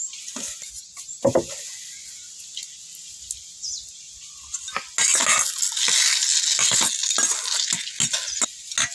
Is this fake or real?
real